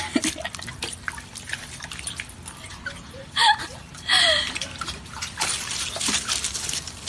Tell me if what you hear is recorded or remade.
remade